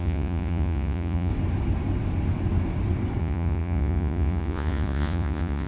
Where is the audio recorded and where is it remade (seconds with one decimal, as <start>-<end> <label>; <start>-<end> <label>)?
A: 0.0-1.3 remade; 1.3-3.2 recorded; 3.2-5.7 remade